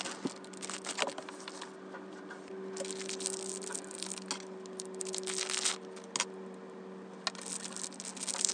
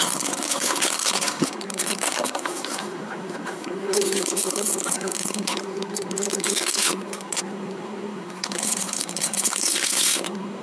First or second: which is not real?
second